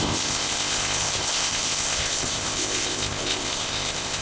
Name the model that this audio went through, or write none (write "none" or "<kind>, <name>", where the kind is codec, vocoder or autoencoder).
codec, ZipCodec